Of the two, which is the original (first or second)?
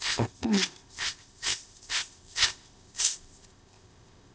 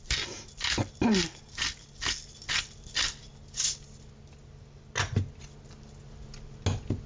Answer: second